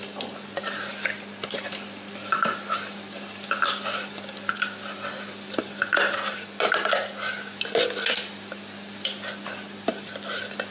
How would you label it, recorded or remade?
recorded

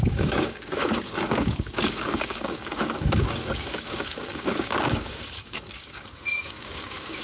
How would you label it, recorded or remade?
remade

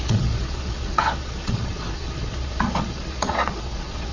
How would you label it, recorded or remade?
remade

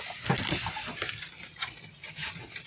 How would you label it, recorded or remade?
recorded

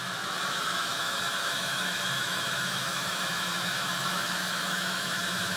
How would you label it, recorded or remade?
remade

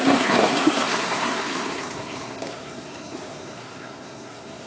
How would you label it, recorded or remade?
remade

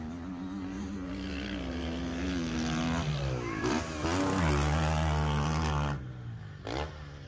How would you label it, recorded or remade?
recorded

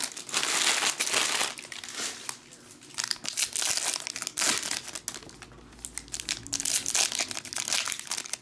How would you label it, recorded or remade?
recorded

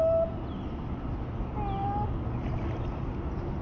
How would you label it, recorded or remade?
recorded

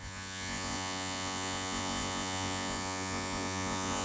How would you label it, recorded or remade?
remade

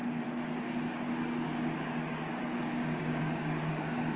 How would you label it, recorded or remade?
remade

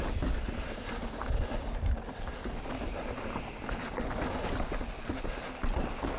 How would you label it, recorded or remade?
recorded